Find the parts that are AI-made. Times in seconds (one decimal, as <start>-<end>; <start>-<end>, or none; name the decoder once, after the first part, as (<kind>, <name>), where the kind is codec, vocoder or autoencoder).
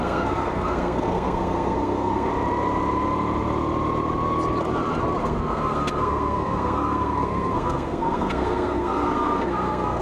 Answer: 0.0-2.3 (codec, SNAC); 5.2-10.0